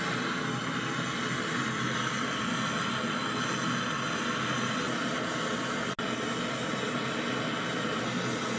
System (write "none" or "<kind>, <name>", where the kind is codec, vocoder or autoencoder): none